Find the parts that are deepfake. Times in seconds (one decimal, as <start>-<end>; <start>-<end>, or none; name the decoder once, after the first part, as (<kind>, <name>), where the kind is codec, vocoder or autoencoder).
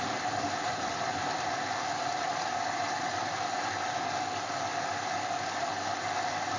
none